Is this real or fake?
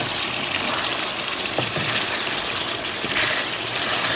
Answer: fake